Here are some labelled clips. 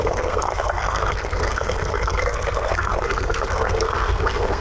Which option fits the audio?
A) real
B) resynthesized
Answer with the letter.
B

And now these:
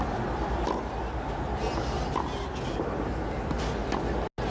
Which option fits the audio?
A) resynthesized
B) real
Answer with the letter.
B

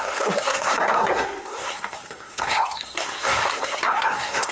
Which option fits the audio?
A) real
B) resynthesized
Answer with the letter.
B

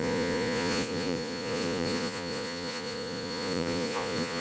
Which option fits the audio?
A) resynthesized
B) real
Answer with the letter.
A